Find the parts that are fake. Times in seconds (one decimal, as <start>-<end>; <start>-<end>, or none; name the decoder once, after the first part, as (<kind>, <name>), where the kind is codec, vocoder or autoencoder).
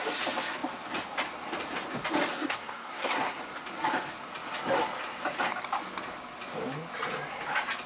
2.3-3.4 (codec, SNAC)